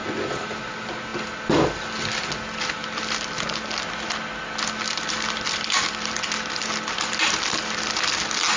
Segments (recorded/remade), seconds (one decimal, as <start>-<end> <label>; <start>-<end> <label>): 0.0-0.6 remade; 0.6-8.6 recorded